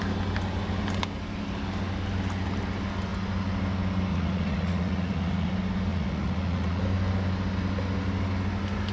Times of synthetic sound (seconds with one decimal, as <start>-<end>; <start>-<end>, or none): 4.1-5.5; 5.9-6.8